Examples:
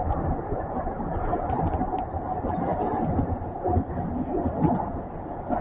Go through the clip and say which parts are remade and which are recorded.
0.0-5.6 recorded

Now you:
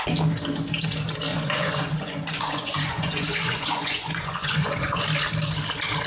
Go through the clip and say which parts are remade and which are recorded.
0.0-1.3 recorded; 1.3-5.0 remade; 5.0-6.1 recorded

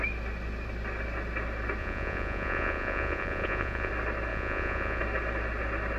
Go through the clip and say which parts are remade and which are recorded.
0.0-1.8 recorded; 1.8-3.9 remade; 3.9-4.3 recorded; 4.3-5.0 remade; 5.0-6.0 recorded